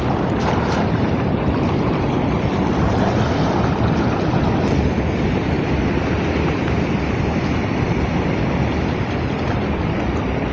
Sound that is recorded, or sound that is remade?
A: remade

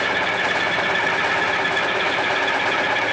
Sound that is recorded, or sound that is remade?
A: recorded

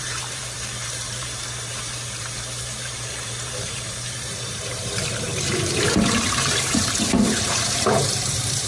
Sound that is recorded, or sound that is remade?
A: remade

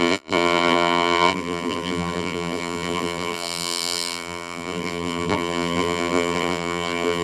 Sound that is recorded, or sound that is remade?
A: remade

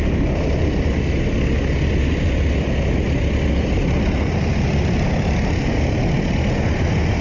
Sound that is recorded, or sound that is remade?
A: recorded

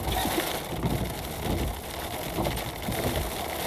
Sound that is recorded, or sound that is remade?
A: recorded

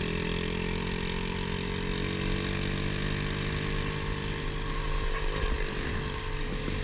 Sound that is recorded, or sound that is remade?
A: recorded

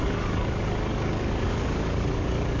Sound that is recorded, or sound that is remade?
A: remade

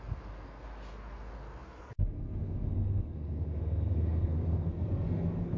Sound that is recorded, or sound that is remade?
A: remade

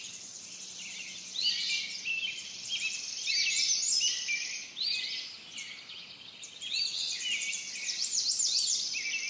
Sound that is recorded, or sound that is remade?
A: recorded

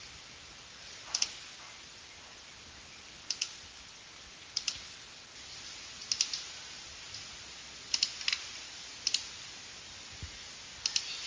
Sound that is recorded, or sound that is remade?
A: recorded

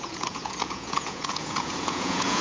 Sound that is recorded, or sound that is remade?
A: remade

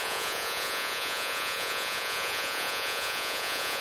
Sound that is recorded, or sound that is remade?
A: remade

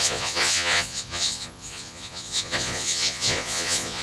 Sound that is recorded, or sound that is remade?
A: remade